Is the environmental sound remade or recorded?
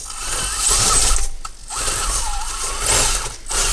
recorded